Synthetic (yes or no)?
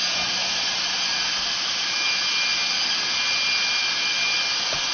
no